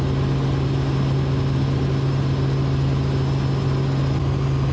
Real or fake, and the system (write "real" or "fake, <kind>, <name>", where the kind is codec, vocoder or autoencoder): real